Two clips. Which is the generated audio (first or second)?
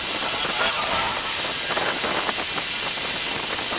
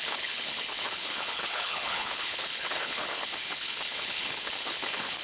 second